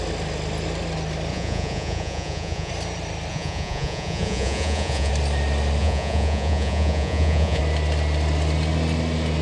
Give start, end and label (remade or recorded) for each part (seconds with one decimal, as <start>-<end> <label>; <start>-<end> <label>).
0.0-1.3 recorded; 1.3-2.7 remade; 2.7-3.3 recorded; 3.3-5.1 remade; 5.1-5.8 recorded; 5.8-7.6 remade; 7.6-9.4 recorded